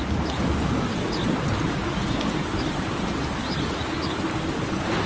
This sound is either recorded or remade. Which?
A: recorded